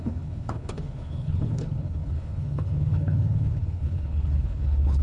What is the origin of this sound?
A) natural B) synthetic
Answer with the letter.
B